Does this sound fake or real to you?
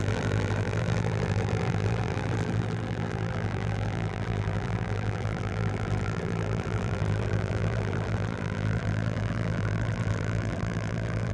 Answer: fake